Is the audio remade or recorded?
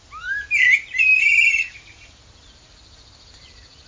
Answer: recorded